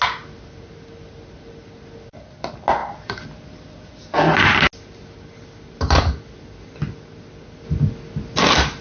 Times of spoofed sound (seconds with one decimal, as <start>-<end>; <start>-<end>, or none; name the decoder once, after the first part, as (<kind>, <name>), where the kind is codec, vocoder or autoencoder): none